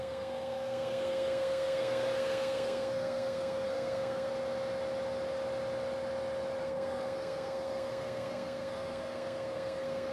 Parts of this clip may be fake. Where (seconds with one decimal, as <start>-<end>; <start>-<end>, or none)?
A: 0.0-4.3; 6.6-10.1